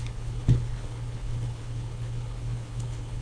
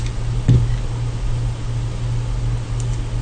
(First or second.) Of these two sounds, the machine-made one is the first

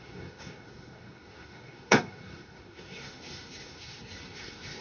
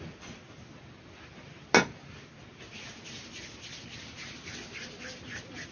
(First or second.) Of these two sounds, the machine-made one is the first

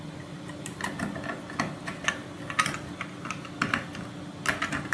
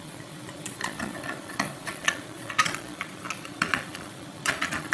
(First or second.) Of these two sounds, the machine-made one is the second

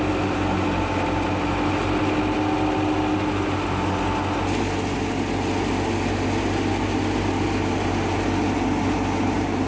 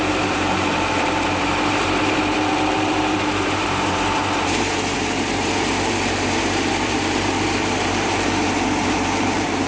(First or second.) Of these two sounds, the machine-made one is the second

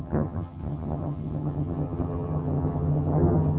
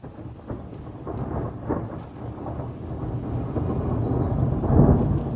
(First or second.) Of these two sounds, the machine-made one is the first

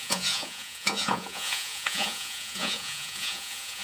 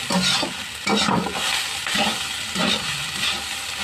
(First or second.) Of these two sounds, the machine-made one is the first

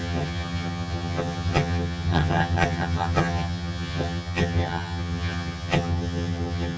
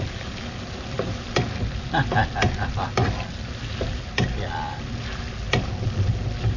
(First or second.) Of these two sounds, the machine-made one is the first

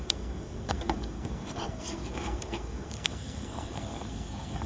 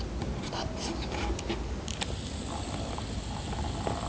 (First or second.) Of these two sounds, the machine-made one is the first